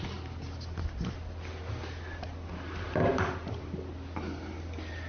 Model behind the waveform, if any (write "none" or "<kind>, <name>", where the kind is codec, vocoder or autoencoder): none